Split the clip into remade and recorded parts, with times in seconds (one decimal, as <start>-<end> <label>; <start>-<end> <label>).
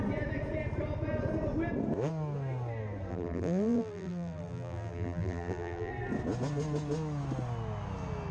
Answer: 0.0-3.1 recorded; 3.1-5.9 remade; 5.9-8.3 recorded